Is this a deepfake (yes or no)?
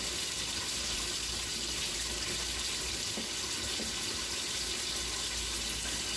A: no